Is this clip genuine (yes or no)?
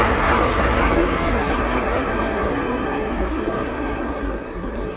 no